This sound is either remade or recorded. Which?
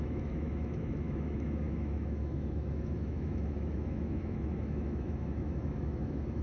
remade